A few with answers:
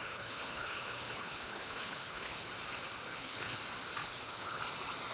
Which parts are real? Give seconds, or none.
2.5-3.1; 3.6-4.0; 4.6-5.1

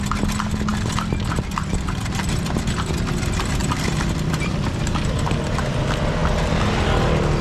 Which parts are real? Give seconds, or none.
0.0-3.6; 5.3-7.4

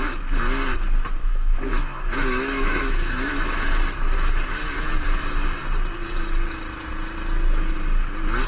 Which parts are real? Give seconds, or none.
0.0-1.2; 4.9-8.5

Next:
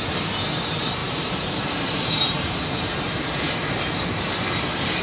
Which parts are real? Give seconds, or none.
0.0-1.0; 4.0-5.0

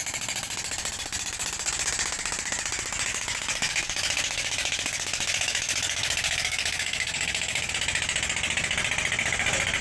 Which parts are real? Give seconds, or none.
0.0-3.1; 7.7-9.8

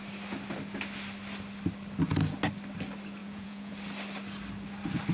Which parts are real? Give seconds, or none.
0.0-3.2; 3.7-5.1